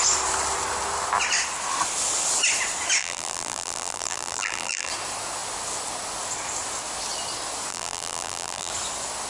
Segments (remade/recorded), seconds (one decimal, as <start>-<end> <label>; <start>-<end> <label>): 0.0-3.0 recorded; 3.0-4.9 remade; 4.9-7.7 recorded; 7.7-8.7 remade; 8.7-9.3 recorded